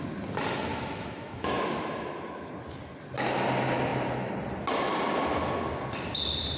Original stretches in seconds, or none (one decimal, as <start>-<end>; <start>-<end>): 0.0-0.7; 2.5-6.6